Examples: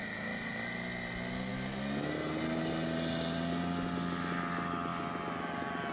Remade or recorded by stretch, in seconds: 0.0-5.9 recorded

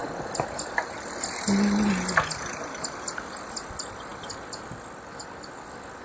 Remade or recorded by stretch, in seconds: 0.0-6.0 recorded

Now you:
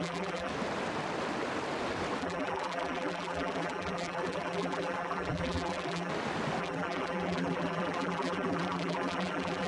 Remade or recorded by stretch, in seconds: 0.0-0.5 remade; 0.5-2.2 recorded; 2.2-6.1 remade; 6.1-6.6 recorded; 6.6-9.7 remade

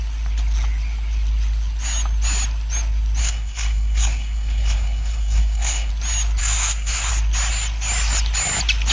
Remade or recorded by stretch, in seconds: 0.0-3.2 recorded; 3.2-5.9 remade; 5.9-6.4 recorded; 6.4-7.1 remade; 7.1-8.9 recorded

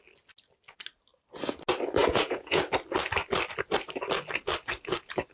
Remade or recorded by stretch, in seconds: 0.0-2.0 recorded; 2.0-2.6 remade; 2.6-5.3 recorded

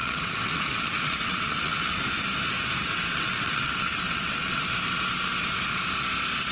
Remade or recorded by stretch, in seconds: 0.0-2.0 remade; 2.0-2.8 recorded; 2.8-4.6 remade; 4.6-6.5 recorded

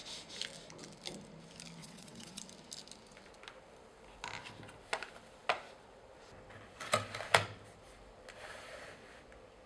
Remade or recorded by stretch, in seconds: 0.0-1.8 recorded; 1.8-2.4 remade; 2.4-9.7 recorded

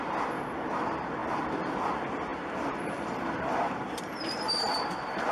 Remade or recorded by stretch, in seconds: 0.0-1.2 recorded; 1.2-1.9 remade; 1.9-2.3 recorded; 2.3-5.3 remade